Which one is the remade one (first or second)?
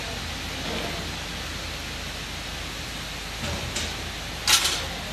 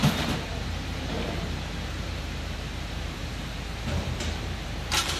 second